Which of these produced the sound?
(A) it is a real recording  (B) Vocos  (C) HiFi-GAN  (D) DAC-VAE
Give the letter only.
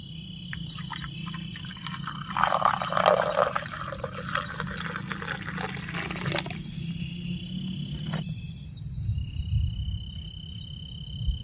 A